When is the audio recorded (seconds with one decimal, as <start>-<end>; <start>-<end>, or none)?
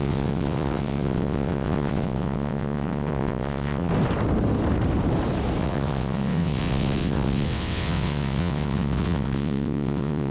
3.9-5.6